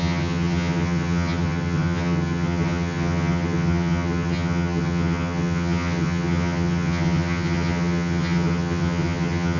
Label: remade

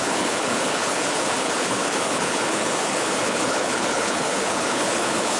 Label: remade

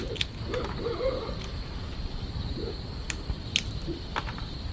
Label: recorded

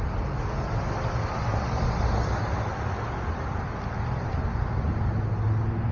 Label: recorded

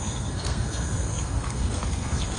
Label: remade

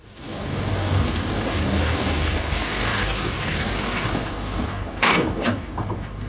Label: remade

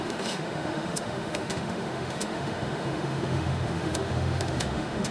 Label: remade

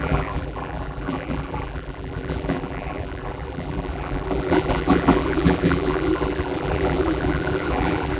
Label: remade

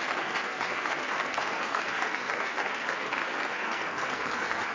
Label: remade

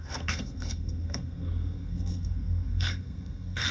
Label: remade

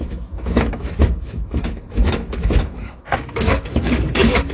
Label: remade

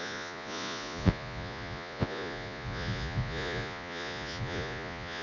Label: remade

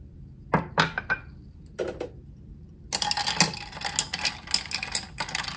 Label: recorded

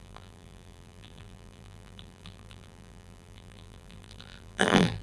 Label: remade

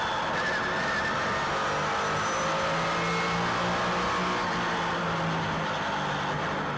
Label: recorded